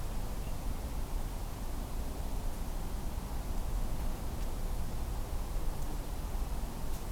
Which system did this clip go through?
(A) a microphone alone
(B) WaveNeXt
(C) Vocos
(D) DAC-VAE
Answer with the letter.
A